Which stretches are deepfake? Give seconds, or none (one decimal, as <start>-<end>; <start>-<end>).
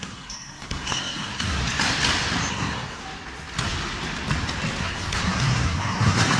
0.0-1.6; 2.5-3.0; 4.8-6.4